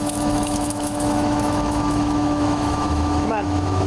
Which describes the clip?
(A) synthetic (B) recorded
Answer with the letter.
A